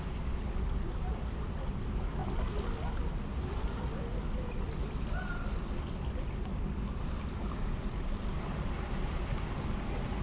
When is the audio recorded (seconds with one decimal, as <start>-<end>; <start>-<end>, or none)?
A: 0.0-10.2